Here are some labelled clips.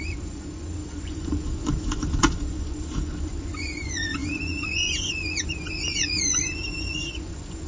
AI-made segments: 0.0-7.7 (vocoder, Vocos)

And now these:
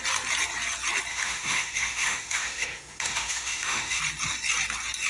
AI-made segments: 1.1-4.0 (autoencoder, DAC-VAE)

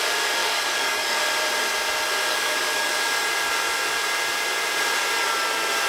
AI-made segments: 0.4-1.2 (codec, DAC); 2.3-2.9